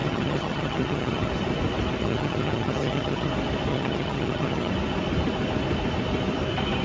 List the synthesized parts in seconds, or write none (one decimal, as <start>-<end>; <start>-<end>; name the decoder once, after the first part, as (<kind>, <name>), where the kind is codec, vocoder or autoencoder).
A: 0.0-1.3 (vocoder, HiFi-GAN); 2.0-3.3; 3.7-4.7